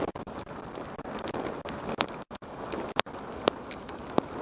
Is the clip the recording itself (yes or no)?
yes